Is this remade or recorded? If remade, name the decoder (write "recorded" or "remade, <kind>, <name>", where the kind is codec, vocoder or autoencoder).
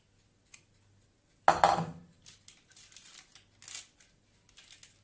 recorded